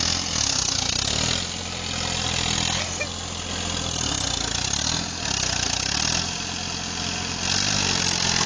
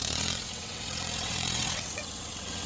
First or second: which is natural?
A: first